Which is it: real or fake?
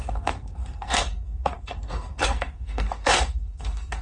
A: fake